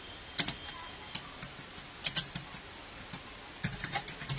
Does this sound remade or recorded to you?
recorded